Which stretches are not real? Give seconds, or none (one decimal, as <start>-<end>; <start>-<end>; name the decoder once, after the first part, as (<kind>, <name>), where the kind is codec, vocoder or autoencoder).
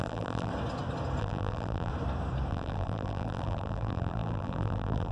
0.0-0.5 (vocoder, BigVGAN v2); 1.2-1.9; 2.5-5.1